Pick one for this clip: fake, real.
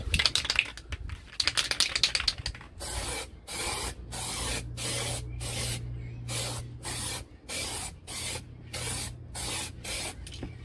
real